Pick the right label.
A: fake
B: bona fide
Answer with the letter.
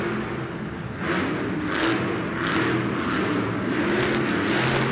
B